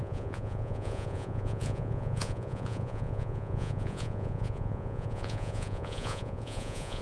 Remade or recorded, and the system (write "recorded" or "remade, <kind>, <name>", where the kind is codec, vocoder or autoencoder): remade, vocoder, Vocos